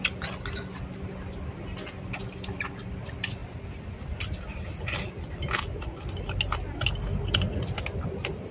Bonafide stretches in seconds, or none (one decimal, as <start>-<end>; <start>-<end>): 0.0-8.5